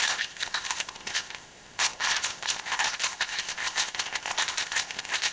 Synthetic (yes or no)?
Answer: yes